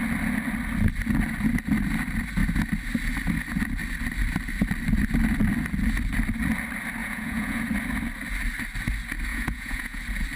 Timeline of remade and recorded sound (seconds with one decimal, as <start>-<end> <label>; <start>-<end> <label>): 0.0-7.0 recorded; 7.0-7.6 remade; 7.6-9.3 recorded; 9.3-10.0 remade; 10.0-10.4 recorded